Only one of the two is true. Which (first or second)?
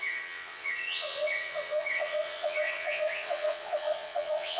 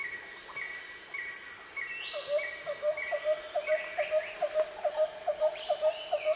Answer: second